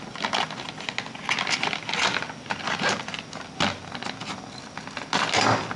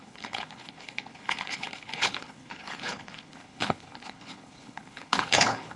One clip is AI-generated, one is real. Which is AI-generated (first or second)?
second